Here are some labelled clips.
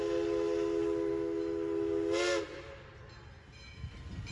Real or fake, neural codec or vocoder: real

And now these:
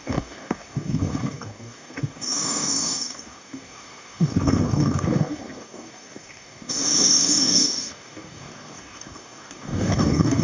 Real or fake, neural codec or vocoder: fake, codec, DAC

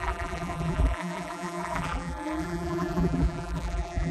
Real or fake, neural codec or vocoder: fake, vocoder, BigVGAN v2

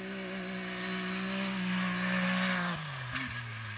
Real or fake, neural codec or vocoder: real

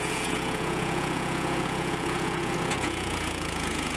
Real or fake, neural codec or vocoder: fake, vocoder, Vocos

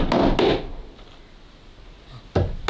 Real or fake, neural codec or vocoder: real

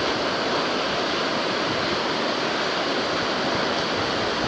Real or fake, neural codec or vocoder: real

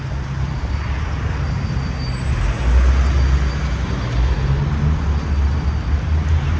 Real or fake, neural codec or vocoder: real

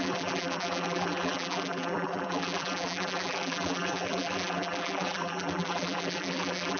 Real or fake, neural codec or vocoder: fake, vocoder, BigVGAN v2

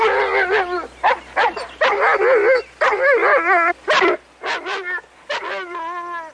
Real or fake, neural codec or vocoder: real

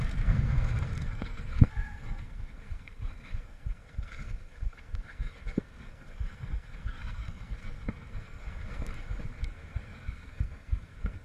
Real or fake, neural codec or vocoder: fake, codec, SNAC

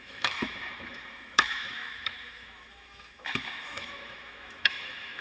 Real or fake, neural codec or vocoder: fake, autoencoder, DAC-VAE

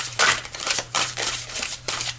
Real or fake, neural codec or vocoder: fake, vocoder, BigVGAN v2